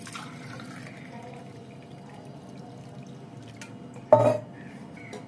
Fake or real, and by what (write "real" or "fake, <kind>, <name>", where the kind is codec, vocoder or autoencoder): real